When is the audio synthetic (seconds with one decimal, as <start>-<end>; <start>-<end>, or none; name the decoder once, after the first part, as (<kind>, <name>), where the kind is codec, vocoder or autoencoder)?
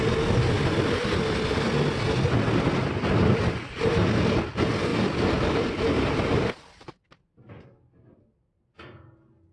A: none